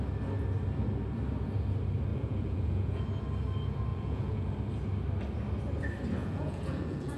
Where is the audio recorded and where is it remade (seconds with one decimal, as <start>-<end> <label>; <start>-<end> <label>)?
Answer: 0.0-2.1 recorded; 2.1-3.0 remade; 3.0-3.9 recorded; 3.9-4.5 remade; 4.5-6.2 recorded; 6.2-7.2 remade